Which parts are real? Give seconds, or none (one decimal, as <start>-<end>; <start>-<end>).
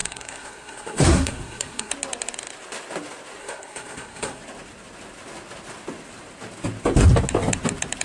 1.9-3.4; 4.4-8.0